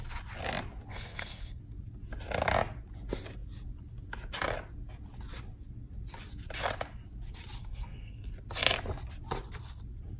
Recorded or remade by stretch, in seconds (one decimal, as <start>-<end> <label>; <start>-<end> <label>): 0.0-0.9 recorded; 0.9-1.6 remade; 1.6-7.6 recorded; 7.6-8.3 remade; 8.3-10.2 recorded